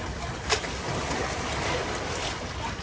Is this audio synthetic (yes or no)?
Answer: no